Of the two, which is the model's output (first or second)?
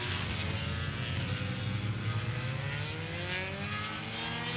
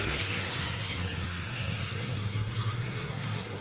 second